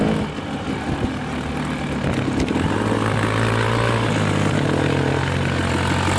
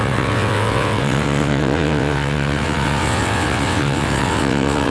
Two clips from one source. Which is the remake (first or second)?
second